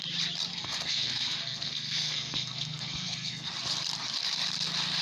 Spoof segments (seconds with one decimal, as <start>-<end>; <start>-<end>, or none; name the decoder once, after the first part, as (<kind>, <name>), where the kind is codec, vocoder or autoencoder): 0.5-3.5 (codec, SNAC)